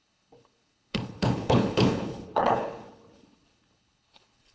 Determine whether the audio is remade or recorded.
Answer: remade